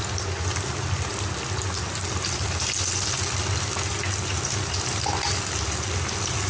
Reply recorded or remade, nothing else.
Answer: recorded